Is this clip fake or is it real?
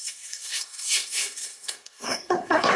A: fake